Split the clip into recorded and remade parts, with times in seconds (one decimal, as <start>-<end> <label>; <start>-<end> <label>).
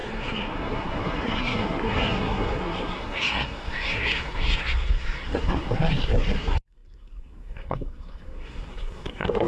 0.0-9.5 remade